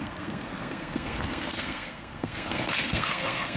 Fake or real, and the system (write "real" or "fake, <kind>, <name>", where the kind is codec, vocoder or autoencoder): fake, codec, SNAC